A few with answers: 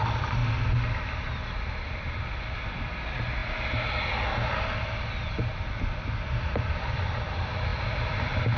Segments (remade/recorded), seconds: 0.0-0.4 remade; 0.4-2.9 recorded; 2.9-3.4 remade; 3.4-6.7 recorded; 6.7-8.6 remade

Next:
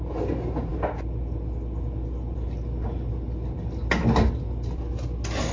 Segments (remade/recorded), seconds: 0.0-5.5 recorded

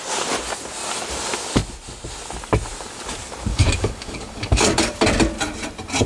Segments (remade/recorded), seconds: 0.0-3.5 recorded; 3.5-4.9 remade; 4.9-6.1 recorded

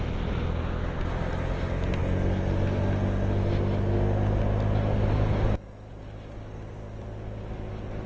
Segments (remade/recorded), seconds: 0.0-8.1 recorded

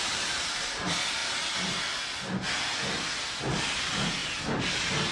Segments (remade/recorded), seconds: 0.0-1.2 remade; 1.2-3.4 recorded; 3.4-4.2 remade; 4.2-5.1 recorded

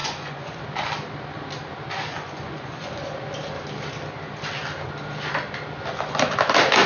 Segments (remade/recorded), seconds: 0.0-0.6 remade; 0.6-2.1 recorded; 2.1-3.0 remade; 3.0-6.9 recorded